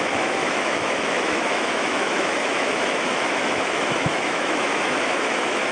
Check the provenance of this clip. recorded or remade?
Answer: remade